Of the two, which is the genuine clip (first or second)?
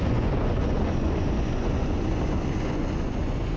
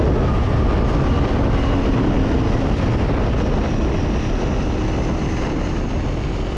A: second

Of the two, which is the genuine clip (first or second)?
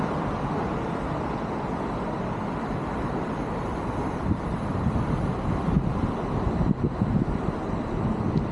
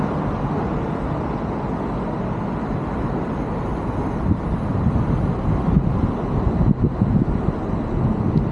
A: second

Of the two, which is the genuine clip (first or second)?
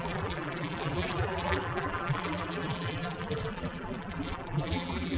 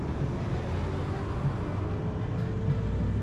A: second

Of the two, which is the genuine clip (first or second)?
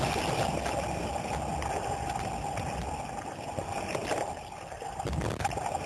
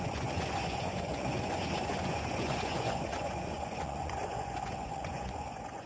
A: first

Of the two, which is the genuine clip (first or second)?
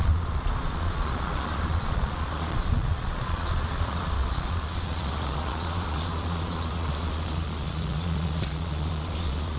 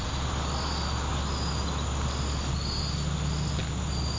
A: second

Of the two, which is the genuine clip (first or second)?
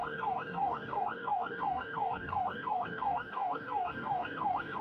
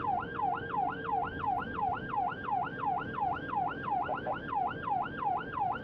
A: second